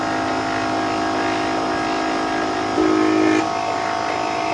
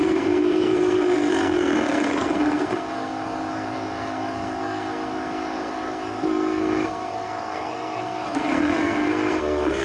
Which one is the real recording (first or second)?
first